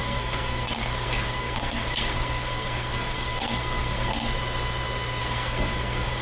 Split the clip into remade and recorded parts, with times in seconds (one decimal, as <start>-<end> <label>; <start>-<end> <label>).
0.0-4.1 remade; 4.1-5.2 recorded; 5.2-6.2 remade